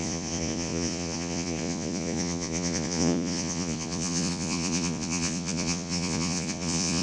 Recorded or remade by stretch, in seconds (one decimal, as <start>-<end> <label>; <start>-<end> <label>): 0.0-7.0 remade